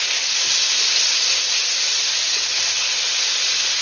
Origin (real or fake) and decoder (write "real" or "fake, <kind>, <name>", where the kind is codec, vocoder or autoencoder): real